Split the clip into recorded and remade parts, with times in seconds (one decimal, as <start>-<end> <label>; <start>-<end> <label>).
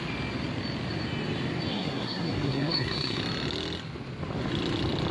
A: 0.0-1.7 recorded; 1.7-3.2 remade; 3.2-5.1 recorded